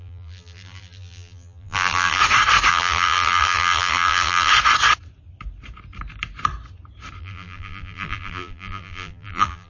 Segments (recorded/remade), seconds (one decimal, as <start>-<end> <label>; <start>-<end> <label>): 0.0-2.2 remade; 2.2-2.7 recorded; 2.7-4.5 remade; 4.5-7.2 recorded; 7.2-9.7 remade

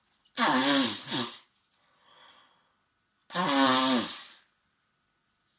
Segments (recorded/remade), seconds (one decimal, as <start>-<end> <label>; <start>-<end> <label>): 0.0-0.6 recorded; 0.6-2.4 remade; 2.4-5.6 recorded

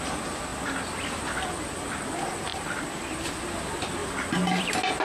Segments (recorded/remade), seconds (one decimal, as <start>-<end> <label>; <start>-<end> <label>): 0.0-0.5 recorded; 0.5-1.4 remade; 1.4-2.5 recorded; 2.5-3.5 remade; 3.5-5.0 recorded

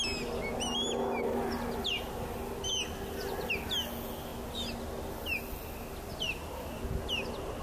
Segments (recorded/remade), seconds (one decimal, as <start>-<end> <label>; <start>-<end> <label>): 0.0-7.6 recorded

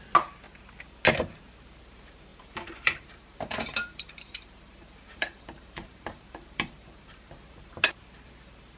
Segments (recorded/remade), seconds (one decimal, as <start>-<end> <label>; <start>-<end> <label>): 0.0-2.3 recorded; 2.3-7.3 remade; 7.3-8.8 recorded

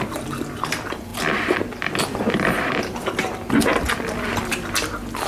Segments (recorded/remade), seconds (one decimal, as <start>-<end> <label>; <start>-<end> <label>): 0.0-1.1 remade; 1.1-2.3 recorded; 2.3-5.3 remade